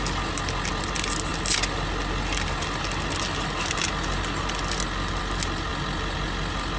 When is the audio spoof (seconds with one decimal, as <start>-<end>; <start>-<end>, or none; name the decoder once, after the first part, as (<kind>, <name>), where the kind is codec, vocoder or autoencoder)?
none